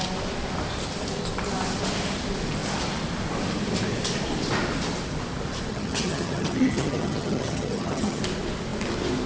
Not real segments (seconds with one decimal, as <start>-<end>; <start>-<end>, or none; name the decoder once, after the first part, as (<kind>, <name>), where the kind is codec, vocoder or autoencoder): 5.7-8.2 (vocoder, HiFi-GAN)